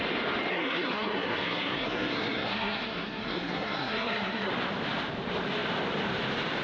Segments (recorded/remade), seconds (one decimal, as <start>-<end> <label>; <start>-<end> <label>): 0.0-0.5 recorded; 0.5-4.5 remade; 4.5-6.6 recorded